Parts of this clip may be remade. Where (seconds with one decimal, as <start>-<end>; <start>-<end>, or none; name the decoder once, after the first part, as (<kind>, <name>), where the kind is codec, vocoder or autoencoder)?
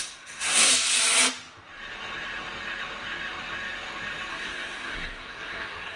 0.0-0.7 (codec, SNAC); 4.3-6.0